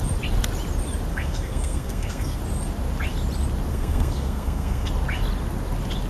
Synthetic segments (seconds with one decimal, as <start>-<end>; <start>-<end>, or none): 1.1-2.4; 3.7-4.9